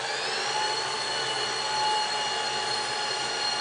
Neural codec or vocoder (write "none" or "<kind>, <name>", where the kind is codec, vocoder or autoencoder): none